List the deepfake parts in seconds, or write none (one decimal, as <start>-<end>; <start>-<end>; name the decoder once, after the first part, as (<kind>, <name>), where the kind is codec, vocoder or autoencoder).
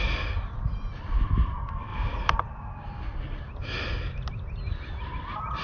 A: 1.9-2.4 (vocoder, BigVGAN v2)